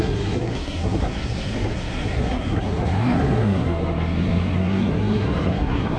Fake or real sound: fake